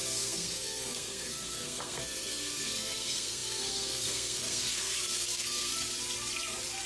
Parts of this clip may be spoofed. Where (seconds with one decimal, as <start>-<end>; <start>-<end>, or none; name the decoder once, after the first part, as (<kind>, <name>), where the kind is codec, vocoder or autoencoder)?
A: 0.0-5.7 (codec, SNAC)